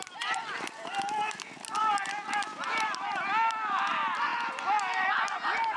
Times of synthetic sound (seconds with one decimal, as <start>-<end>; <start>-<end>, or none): none